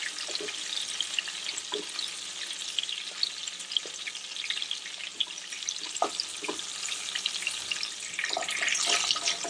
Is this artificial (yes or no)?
no